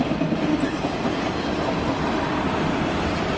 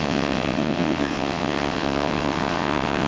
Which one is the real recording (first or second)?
first